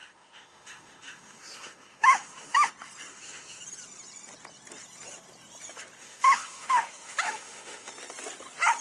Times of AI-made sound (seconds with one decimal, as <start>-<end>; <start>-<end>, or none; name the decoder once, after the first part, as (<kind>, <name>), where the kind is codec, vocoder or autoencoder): 0.0-2.7 (autoencoder, DAC-VAE); 3.1-3.6; 6.0-7.9